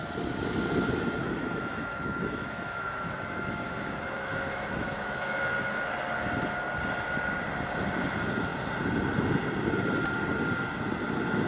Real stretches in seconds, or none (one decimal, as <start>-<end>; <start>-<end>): 0.0-1.2; 5.8-11.5